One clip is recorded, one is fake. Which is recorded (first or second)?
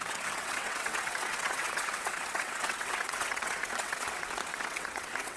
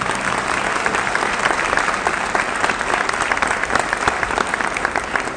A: second